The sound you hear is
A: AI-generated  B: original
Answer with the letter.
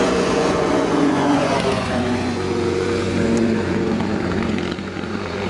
A